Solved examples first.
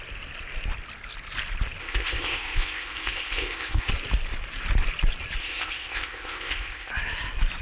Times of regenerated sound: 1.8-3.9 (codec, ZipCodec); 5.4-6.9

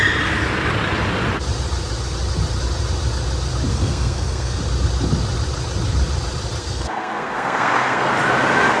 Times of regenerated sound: 3.7-4.6 (codec, SNAC); 6.6-8.1

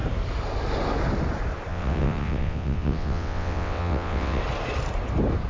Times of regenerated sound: 1.7-4.4 (vocoder, WaveNeXt)

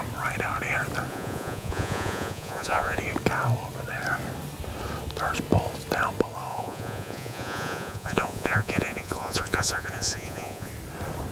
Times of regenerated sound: 1.1-3.0 (vocoder, Vocos); 6.5-10.7

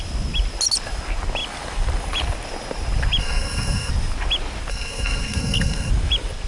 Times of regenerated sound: 3.2-3.9 (codec, SNAC); 4.7-5.9

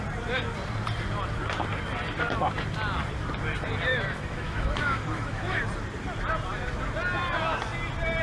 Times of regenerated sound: 3.9-5.6 (autoencoder, DAC-VAE)